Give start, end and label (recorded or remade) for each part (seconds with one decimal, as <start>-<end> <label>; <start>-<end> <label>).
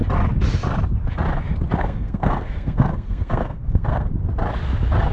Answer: 0.0-1.8 recorded; 1.8-4.1 remade; 4.1-5.1 recorded